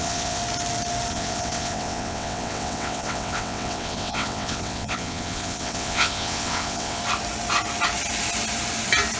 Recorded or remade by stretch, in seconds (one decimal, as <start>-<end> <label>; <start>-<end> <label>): 0.0-0.4 remade; 0.4-1.1 recorded; 1.1-7.0 remade; 7.0-9.2 recorded